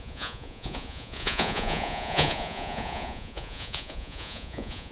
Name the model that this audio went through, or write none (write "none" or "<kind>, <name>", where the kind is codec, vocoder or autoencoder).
vocoder, Vocos